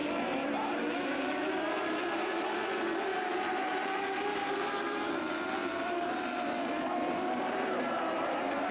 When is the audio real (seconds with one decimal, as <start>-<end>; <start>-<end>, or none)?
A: none